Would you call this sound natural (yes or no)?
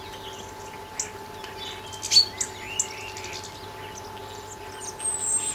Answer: yes